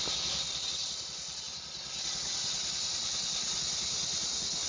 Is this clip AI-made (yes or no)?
no